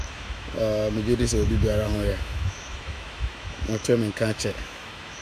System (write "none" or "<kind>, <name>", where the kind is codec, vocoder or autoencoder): autoencoder, DAC-VAE